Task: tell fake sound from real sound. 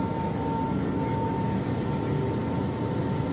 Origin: real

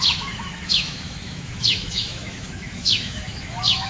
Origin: fake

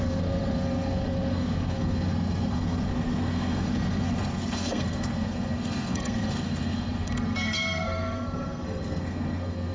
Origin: fake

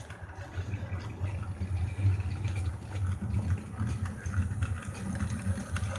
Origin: real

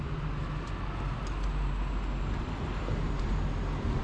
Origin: real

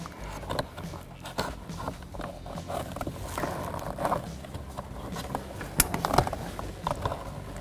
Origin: real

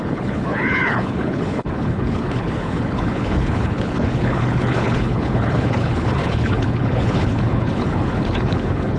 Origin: fake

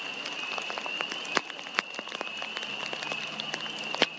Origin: real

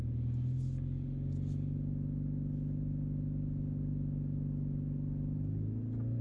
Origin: real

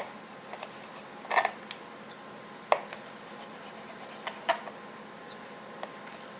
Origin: real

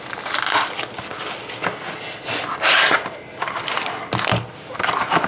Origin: real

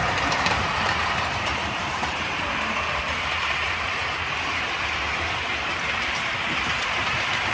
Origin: fake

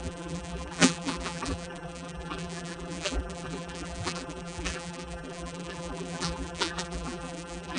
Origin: fake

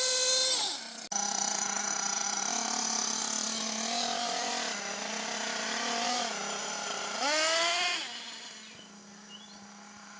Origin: real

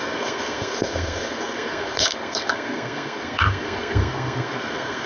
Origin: fake